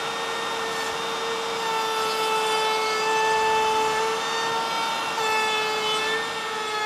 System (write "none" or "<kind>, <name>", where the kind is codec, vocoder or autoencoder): none